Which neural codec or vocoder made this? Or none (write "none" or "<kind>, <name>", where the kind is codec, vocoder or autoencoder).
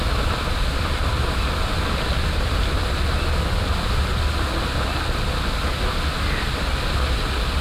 none